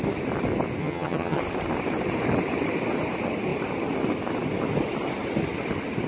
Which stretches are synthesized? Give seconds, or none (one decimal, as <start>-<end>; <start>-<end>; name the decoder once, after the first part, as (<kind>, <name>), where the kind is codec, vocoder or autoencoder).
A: 0.8-1.4 (vocoder, HiFi-GAN)